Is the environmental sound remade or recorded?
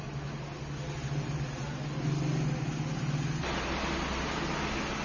recorded